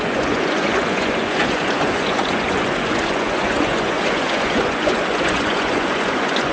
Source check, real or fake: fake